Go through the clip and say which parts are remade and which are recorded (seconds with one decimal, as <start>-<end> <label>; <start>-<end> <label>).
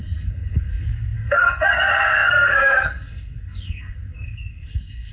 0.0-5.1 remade